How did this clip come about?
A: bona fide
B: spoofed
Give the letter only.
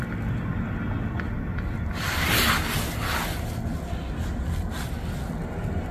A